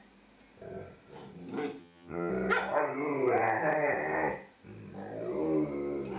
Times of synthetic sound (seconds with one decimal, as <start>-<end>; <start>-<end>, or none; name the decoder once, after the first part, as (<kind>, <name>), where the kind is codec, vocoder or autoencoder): 1.8-2.3 (vocoder, HiFi-GAN)